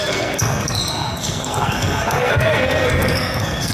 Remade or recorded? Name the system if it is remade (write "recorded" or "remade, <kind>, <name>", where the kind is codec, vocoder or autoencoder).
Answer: remade, codec, SNAC